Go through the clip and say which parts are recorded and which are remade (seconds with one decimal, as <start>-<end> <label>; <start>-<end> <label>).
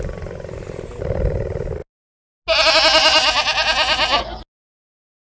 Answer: 0.0-5.3 recorded